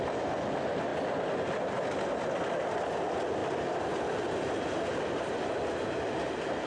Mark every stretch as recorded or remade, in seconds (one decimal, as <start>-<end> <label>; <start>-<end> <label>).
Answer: 0.0-6.7 recorded